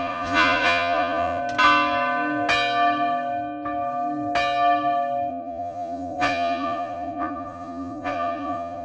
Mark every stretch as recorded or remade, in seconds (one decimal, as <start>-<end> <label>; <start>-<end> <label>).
0.0-1.4 remade; 1.4-5.3 recorded; 5.3-8.8 remade